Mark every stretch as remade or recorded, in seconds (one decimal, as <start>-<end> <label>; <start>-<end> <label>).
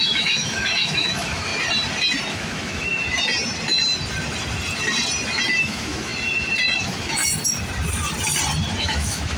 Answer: 0.0-1.5 remade; 1.5-2.3 recorded; 2.3-2.9 remade; 2.9-5.6 recorded; 5.6-6.1 remade; 6.1-6.8 recorded; 6.8-7.2 remade; 7.2-8.8 recorded; 8.8-9.4 remade